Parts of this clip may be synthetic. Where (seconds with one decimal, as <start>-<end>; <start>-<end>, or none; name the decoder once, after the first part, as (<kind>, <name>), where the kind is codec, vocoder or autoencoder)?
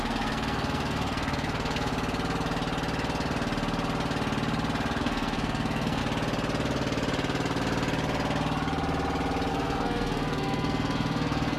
0.0-1.9 (codec, SNAC); 5.0-6.0; 9.5-11.6